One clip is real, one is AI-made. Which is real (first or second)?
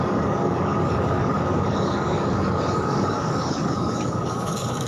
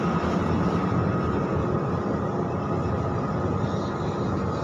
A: second